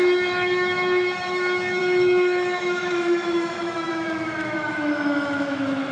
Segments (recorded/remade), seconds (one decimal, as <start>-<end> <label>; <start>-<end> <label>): 0.0-5.9 remade